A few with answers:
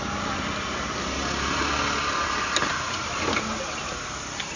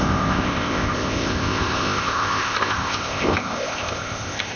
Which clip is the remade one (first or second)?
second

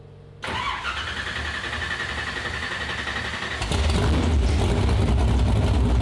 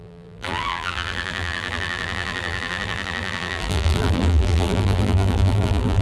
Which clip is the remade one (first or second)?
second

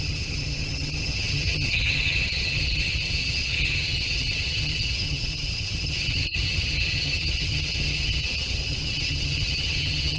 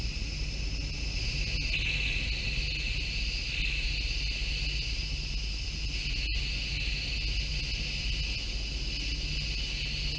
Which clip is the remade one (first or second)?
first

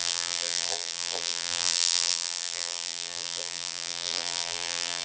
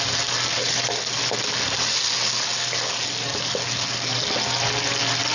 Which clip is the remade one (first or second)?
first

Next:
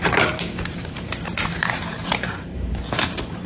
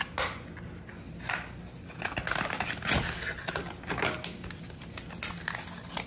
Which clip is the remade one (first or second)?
first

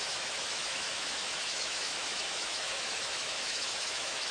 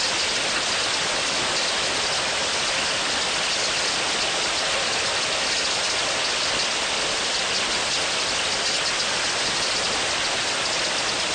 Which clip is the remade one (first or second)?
first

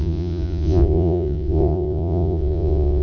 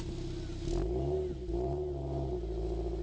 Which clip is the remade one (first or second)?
first